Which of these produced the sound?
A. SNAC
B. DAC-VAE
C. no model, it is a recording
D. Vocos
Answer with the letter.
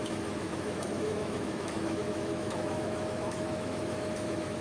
B